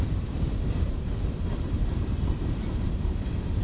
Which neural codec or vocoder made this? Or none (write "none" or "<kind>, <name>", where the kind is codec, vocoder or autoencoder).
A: vocoder, BigVGAN v2